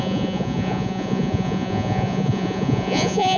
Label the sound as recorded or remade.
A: remade